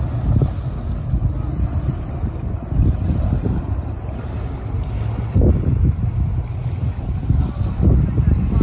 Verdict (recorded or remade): recorded